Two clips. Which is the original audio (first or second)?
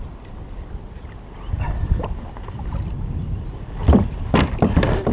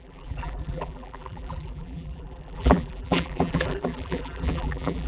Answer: first